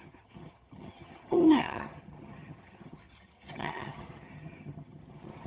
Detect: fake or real fake